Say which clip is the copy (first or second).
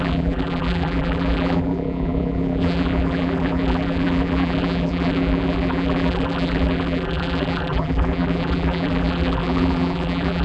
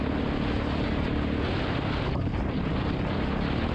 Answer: first